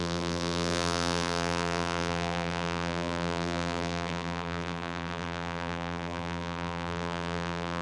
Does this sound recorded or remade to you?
remade